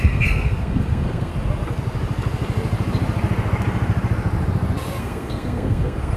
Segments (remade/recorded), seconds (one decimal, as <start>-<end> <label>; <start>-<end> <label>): 0.0-1.3 remade; 1.3-5.0 recorded; 5.0-6.2 remade